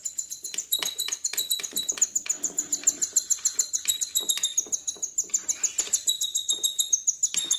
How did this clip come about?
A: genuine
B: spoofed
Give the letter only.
A